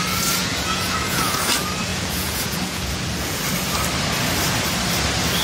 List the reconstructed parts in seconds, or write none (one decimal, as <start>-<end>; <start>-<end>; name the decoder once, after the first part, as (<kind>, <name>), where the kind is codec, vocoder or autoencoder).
0.4-1.5 (vocoder, Vocos); 1.9-3.4